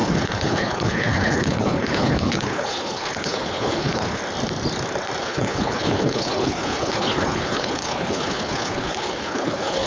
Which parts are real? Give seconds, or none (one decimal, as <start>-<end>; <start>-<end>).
4.2-5.2